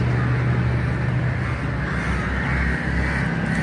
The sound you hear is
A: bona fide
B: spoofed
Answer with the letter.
A